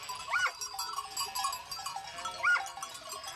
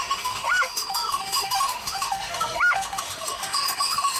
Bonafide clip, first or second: first